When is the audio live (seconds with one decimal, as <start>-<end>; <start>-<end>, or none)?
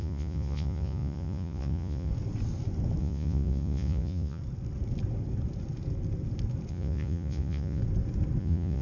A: 2.1-3.0; 4.4-6.7; 7.8-8.4